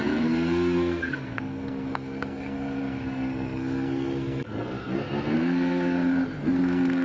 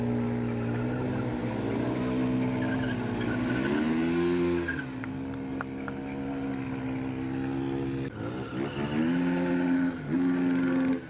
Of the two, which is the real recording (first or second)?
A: second